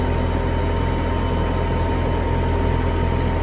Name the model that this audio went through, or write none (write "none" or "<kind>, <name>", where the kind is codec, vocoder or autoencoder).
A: none